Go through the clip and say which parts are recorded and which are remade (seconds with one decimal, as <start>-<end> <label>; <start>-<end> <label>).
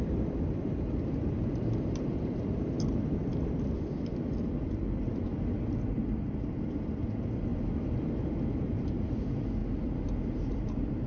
0.0-7.5 remade; 7.5-8.2 recorded; 8.2-9.6 remade; 9.6-10.5 recorded; 10.5-11.1 remade